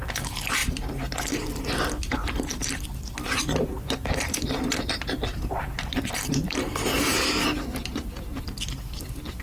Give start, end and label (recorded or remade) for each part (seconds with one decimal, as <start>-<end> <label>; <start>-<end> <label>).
0.0-5.3 recorded; 5.3-6.7 remade; 6.7-9.4 recorded